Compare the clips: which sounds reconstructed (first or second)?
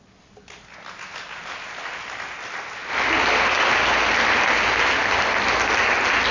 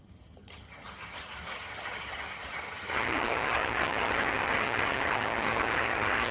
second